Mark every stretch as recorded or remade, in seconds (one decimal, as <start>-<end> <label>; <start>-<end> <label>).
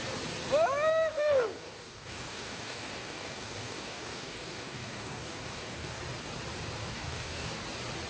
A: 0.0-1.1 recorded; 1.1-6.0 remade; 6.0-6.8 recorded; 6.8-7.6 remade; 7.6-8.1 recorded